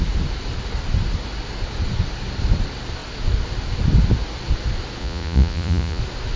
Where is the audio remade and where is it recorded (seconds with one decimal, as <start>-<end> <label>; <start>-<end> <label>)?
0.0-5.0 recorded; 5.0-6.0 remade; 6.0-6.4 recorded